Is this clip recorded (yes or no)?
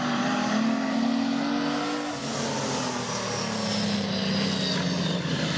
yes